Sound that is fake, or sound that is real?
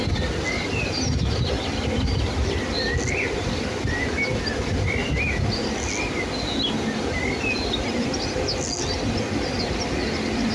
real